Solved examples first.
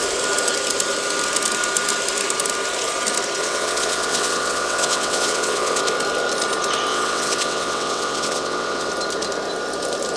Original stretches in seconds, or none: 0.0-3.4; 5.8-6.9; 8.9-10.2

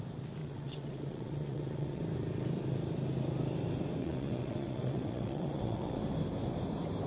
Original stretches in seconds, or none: 0.0-0.4; 2.0-4.0; 6.0-7.1

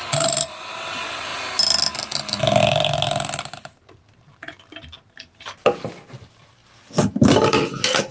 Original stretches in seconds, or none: 0.0-8.1

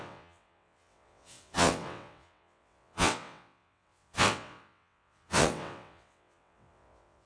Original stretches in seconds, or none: none

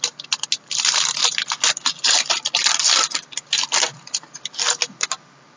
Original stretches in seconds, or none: 0.0-5.6